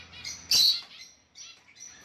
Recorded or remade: recorded